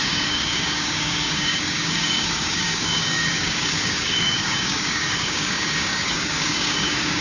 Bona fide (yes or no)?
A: no